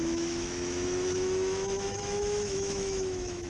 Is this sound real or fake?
fake